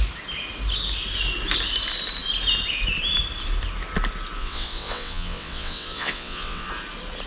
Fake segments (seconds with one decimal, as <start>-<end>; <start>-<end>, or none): 4.4-6.7